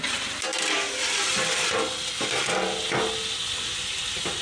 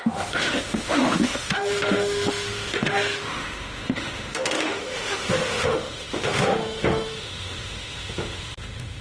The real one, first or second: first